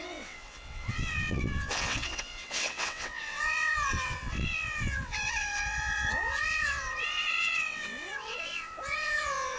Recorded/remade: remade